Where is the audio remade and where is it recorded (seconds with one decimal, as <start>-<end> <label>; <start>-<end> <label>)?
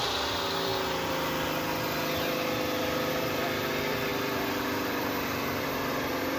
0.0-0.7 remade; 0.7-3.1 recorded; 3.1-6.4 remade